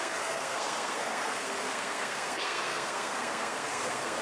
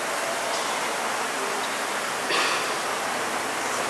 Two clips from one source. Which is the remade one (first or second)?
first